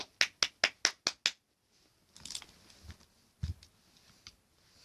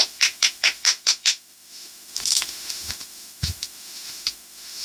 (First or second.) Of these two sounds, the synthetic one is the second